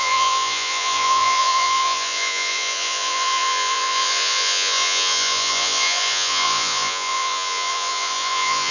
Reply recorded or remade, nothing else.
remade